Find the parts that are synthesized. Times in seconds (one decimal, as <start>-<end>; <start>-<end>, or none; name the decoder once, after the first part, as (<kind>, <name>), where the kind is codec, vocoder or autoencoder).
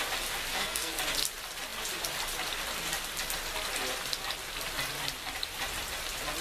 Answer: 0.5-1.0 (codec, SNAC)